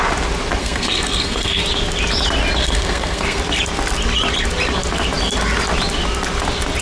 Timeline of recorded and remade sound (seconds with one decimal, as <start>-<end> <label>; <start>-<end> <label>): 0.0-0.6 recorded; 0.6-1.6 remade; 1.6-2.6 recorded; 2.6-3.4 remade; 3.4-6.8 recorded